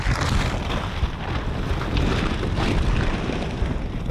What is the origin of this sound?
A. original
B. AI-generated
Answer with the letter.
A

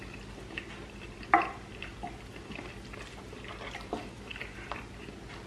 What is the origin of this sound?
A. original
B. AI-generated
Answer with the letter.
A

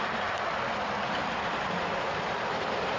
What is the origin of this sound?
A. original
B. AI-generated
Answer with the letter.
A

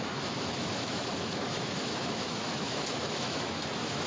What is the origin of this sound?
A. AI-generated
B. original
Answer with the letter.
A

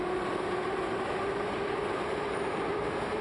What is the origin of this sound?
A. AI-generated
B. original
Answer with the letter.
A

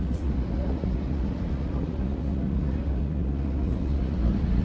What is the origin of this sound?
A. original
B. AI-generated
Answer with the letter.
B